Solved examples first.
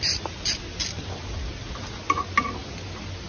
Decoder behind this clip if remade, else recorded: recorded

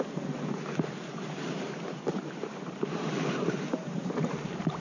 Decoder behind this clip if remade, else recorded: remade, vocoder, BigVGAN v2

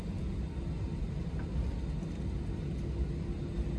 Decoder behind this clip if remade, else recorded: recorded